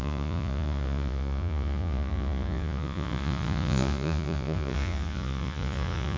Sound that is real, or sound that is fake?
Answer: fake